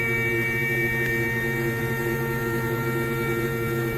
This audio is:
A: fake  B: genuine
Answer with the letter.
A